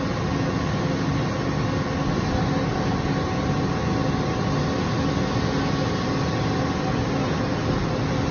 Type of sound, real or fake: real